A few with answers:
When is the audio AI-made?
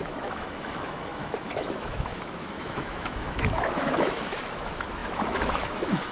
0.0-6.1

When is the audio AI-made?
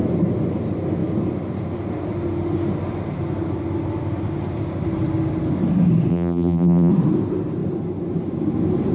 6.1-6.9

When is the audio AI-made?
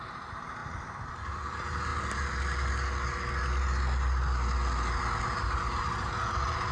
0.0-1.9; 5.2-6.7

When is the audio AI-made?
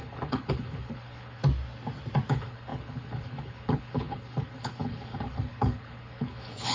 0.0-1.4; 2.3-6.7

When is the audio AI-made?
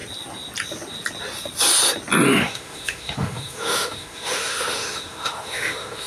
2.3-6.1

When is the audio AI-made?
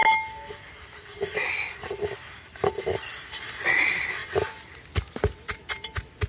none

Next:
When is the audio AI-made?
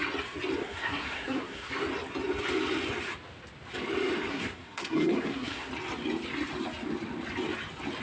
0.6-1.7; 4.3-5.7